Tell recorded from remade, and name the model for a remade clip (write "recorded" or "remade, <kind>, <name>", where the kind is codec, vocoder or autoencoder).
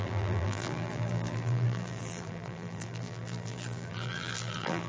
remade, vocoder, BigVGAN v2